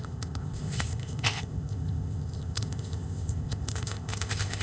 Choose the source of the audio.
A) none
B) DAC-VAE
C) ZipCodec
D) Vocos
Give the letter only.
C